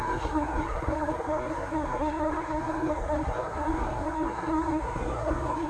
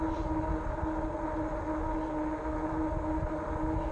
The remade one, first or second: first